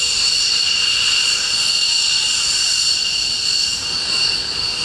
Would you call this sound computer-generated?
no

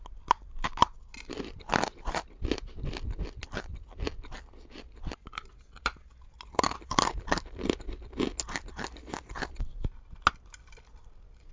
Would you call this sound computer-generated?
no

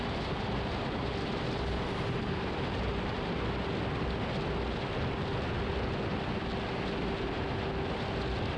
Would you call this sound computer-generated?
no